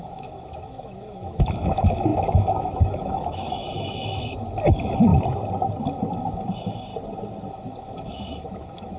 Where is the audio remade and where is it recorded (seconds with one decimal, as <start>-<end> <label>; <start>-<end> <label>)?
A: 0.0-5.1 remade; 5.1-5.8 recorded; 5.8-6.9 remade; 6.9-7.5 recorded; 7.5-9.0 remade